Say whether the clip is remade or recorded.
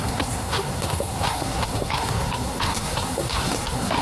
remade